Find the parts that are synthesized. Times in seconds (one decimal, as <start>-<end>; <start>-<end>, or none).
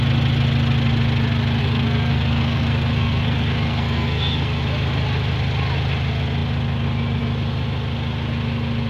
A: 1.6-4.6